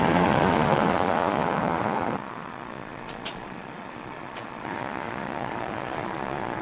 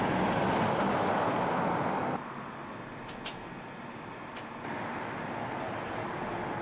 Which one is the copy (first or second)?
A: first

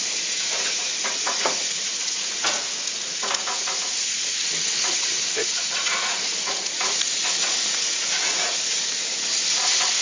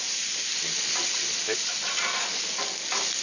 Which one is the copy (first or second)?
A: first